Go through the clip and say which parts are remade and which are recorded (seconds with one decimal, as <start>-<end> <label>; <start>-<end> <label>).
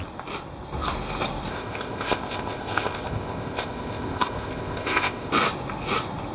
0.0-1.5 recorded; 1.5-5.3 remade; 5.3-6.3 recorded